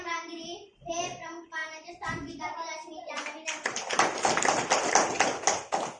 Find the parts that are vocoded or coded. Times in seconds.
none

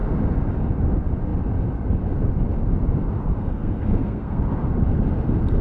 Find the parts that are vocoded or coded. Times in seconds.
3.3-4.4

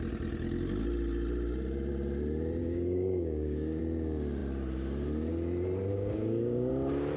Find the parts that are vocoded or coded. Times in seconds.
2.6-3.8; 5.9-6.7